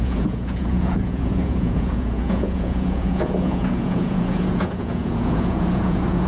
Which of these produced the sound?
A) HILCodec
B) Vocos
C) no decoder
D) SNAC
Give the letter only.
B